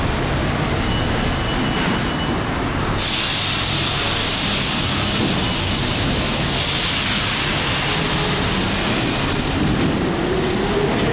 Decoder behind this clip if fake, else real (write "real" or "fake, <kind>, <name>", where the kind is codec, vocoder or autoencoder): real